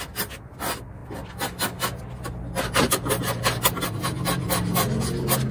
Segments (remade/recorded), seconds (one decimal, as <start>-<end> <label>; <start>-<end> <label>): 0.0-5.5 recorded